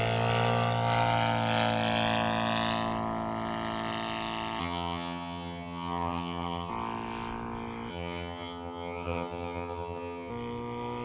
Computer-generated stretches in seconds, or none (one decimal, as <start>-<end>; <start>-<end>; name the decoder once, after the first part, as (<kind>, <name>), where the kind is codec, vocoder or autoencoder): 4.6-6.7 (vocoder, HiFi-GAN); 7.9-10.3